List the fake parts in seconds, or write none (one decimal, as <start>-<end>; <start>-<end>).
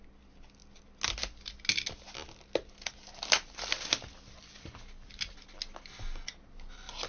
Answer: none